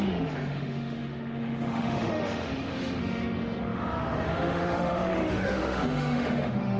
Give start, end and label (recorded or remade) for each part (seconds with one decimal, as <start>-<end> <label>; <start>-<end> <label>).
0.0-6.8 remade